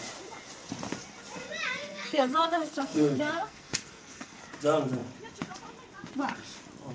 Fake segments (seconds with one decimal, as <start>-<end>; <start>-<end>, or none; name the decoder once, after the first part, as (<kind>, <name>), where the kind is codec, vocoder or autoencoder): 1.8-4.4 (codec, SNAC)